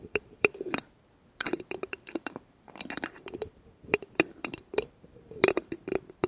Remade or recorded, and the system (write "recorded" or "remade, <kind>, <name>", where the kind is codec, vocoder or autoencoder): remade, vocoder, BigVGAN v2